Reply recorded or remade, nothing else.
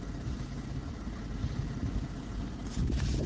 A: recorded